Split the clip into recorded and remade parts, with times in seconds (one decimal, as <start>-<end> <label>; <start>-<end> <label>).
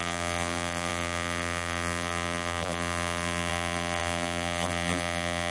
0.0-5.5 remade